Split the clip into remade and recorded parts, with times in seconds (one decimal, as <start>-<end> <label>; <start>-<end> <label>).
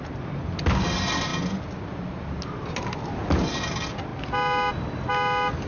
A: 0.0-5.7 recorded